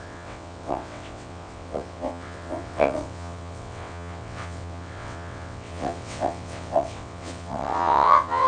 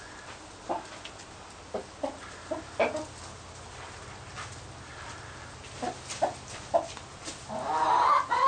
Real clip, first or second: second